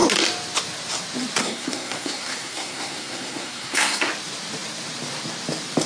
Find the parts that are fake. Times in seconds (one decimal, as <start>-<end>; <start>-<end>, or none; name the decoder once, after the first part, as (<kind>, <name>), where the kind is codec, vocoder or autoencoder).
1.4-4.1 (codec, SNAC)